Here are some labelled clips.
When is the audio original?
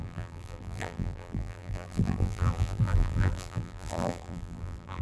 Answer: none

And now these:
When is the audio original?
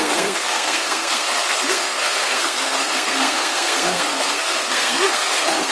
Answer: none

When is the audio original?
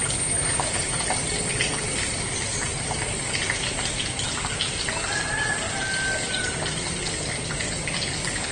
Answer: 0.0-8.5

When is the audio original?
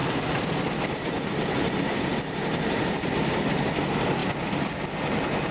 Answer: 0.9-4.2; 4.7-5.5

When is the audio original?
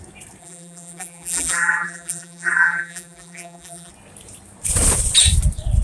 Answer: 0.0-0.4; 3.9-5.8